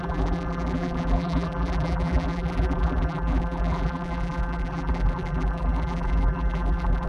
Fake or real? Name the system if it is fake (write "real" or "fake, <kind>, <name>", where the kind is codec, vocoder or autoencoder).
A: fake, vocoder, BigVGAN v2